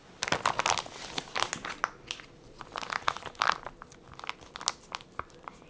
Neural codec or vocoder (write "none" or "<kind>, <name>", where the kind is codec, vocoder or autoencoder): none